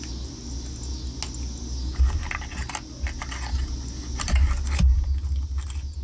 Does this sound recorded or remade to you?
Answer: recorded